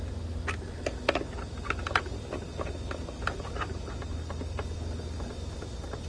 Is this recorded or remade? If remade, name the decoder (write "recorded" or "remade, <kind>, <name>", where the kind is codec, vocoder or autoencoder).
recorded